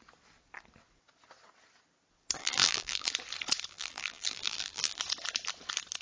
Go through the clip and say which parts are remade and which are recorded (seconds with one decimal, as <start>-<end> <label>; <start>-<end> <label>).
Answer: 0.0-2.4 recorded; 2.4-3.1 remade; 3.1-3.7 recorded; 3.7-5.0 remade; 5.0-6.0 recorded